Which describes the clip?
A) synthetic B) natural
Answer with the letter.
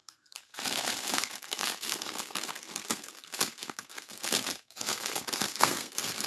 A